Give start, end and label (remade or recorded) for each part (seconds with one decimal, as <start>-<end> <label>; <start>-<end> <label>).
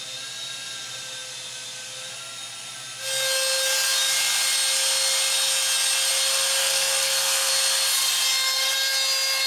0.0-6.6 recorded; 6.6-7.5 remade; 7.5-9.5 recorded